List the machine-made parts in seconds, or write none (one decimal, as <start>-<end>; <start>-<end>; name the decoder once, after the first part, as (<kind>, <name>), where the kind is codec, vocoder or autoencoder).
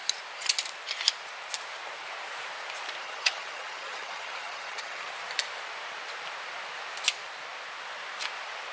3.0-5.1 (vocoder, HiFi-GAN)